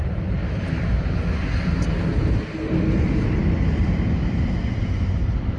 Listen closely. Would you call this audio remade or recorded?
recorded